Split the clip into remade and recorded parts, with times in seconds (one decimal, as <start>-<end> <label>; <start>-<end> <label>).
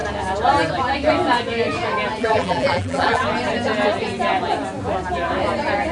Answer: 0.0-2.2 recorded; 2.2-3.2 remade; 3.2-5.9 recorded